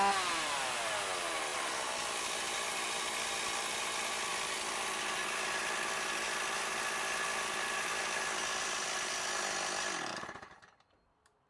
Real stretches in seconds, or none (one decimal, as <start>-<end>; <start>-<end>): 0.0-11.5